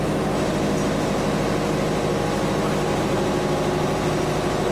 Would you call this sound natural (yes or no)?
yes